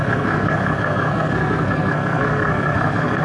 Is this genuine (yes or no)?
no